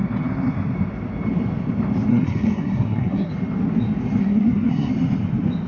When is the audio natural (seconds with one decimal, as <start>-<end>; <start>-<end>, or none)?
0.0-2.1; 3.3-4.2; 4.9-5.7